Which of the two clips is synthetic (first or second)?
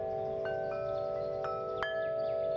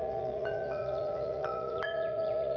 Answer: second